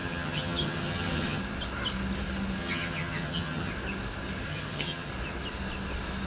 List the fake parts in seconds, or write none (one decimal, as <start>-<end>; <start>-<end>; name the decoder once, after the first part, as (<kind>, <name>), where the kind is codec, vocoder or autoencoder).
0.0-1.4 (vocoder, HiFi-GAN); 2.6-3.7; 4.5-5.1